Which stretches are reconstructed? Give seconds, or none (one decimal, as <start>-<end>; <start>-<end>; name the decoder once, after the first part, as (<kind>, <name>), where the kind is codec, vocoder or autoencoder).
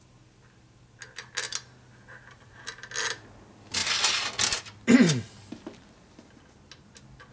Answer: none